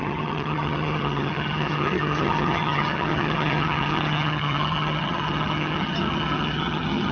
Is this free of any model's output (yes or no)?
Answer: no